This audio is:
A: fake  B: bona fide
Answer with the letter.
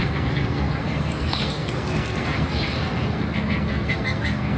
A